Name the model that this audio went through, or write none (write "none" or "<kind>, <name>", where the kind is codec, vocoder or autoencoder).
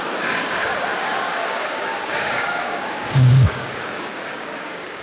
codec, DAC